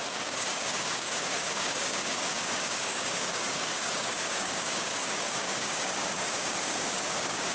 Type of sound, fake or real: fake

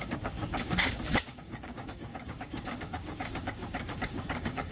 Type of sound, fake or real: fake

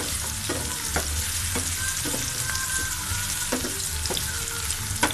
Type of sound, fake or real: real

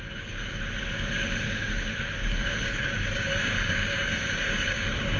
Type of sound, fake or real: fake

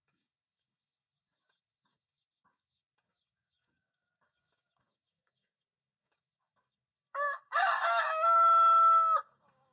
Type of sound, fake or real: fake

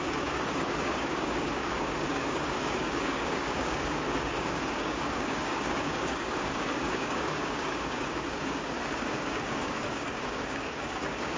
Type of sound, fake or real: fake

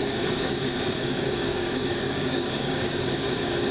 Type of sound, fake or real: fake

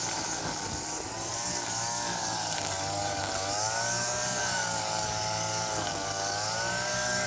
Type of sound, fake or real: fake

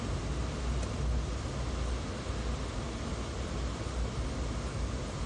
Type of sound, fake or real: real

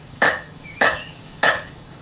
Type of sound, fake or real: fake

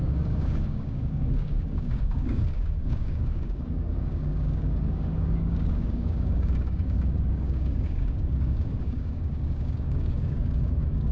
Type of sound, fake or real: fake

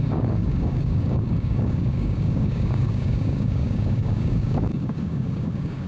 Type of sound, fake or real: fake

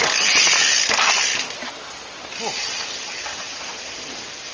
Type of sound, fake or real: real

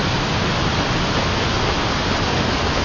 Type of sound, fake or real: real